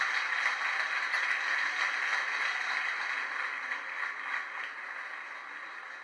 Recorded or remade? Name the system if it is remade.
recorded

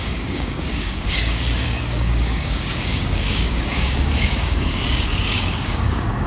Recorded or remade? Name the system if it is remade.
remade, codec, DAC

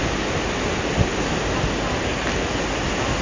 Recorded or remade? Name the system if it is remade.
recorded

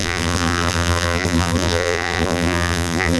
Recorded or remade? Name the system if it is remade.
remade, vocoder, BigVGAN v2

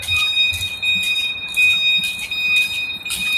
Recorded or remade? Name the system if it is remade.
recorded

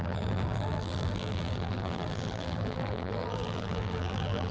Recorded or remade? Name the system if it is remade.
remade, vocoder, BigVGAN v2